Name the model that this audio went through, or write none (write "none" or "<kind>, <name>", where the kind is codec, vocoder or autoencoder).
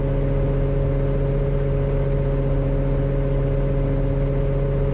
none